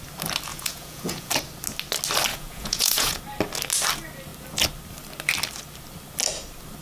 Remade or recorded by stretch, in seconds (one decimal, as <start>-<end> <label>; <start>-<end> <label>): 0.0-0.5 recorded; 0.5-1.3 remade; 1.3-2.3 recorded; 2.3-3.2 remade; 3.2-6.8 recorded